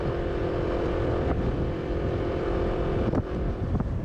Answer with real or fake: fake